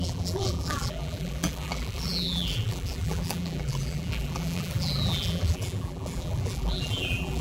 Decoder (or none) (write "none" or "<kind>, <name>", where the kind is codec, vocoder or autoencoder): vocoder, BigVGAN v2